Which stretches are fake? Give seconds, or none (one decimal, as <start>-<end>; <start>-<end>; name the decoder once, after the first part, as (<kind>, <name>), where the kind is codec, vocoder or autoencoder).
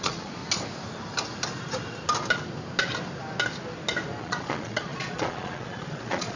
0.0-0.4 (vocoder, Vocos); 4.2-6.4